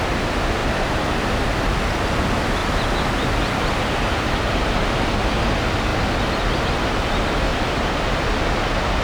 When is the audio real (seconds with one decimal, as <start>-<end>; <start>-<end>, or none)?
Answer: 0.0-7.5; 8.2-9.0